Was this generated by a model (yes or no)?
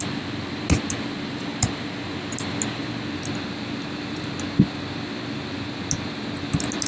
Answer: no